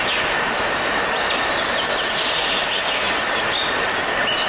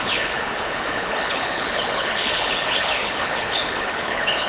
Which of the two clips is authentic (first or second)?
first